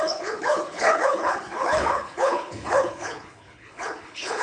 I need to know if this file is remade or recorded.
remade